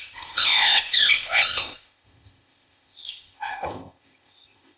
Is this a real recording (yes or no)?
no